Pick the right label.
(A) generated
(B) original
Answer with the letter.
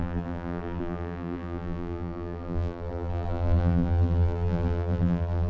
A